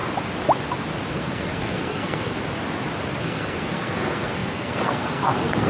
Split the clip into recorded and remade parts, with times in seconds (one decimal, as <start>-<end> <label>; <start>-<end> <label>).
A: 0.0-1.1 recorded; 1.1-2.3 remade; 2.3-3.2 recorded; 3.2-5.7 remade